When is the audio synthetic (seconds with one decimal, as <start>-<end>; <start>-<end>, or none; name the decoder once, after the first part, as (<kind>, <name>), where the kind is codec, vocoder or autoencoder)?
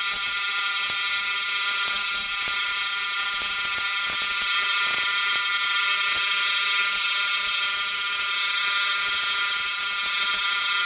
0.0-10.9 (vocoder, Vocos)